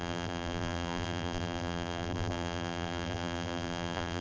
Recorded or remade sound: remade